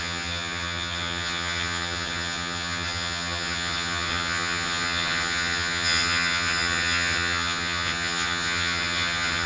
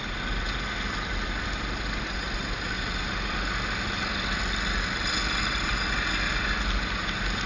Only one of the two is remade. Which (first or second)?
first